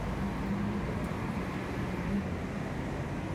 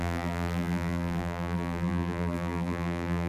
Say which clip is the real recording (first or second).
first